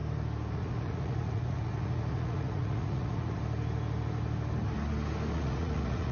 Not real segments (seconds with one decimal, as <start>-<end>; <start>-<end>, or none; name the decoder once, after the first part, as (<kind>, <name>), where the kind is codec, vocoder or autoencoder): 0.5-3.4 (vocoder, Vocos); 5.3-6.1